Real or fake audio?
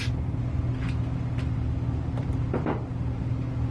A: fake